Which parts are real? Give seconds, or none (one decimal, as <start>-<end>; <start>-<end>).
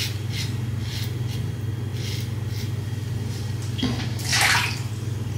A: 0.0-4.3; 4.9-5.4